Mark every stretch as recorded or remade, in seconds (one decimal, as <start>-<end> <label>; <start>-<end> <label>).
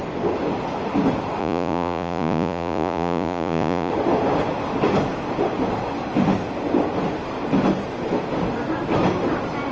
0.0-1.4 recorded; 1.4-3.9 remade; 3.9-9.7 recorded